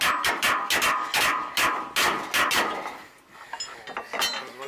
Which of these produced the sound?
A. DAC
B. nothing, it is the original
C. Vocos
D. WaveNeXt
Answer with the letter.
B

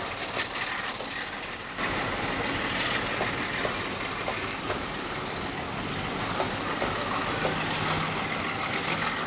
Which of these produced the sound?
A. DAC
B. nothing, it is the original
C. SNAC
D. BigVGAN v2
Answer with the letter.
B